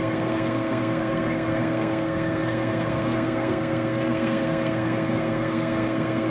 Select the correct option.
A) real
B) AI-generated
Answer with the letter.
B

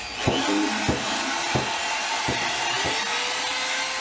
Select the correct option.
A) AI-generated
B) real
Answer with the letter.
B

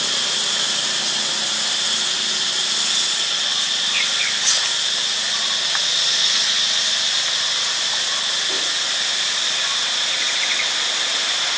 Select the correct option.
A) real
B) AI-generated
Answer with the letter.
A